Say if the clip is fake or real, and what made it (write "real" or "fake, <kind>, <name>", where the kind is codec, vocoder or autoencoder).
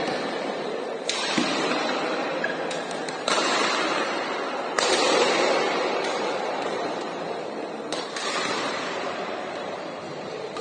fake, vocoder, BigVGAN v2